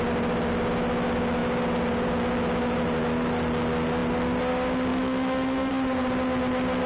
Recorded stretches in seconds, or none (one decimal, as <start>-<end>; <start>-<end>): 0.0-4.9; 5.7-6.9